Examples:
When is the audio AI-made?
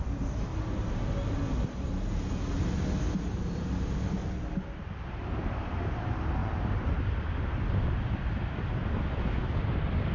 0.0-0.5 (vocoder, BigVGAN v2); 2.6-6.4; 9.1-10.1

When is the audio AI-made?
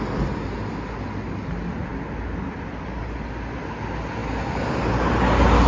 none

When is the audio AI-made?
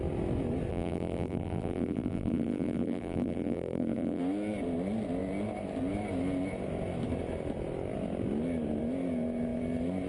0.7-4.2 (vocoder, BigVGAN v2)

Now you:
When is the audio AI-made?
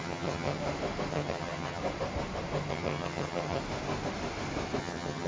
0.0-0.6 (vocoder, HiFi-GAN); 1.1-1.8; 2.7-3.6; 4.8-5.3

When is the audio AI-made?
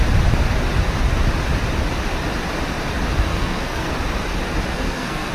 3.3-3.9 (codec, SNAC); 4.7-5.3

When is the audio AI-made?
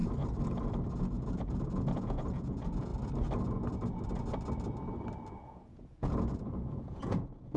1.0-2.9 (vocoder, Vocos); 5.4-7.6